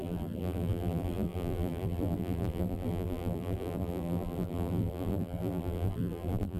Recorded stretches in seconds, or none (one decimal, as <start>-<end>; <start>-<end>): none